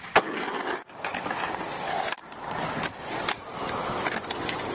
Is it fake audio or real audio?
real